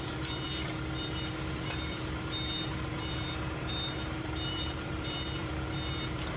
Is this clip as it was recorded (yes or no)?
no